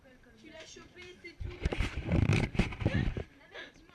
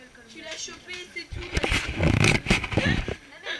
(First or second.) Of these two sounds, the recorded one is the second